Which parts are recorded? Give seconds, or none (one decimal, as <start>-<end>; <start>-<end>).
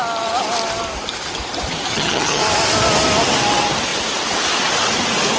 0.0-1.9; 2.4-5.4